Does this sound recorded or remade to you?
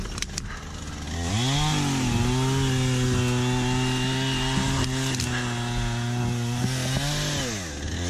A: recorded